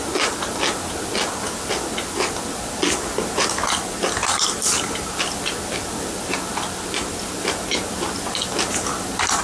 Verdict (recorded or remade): recorded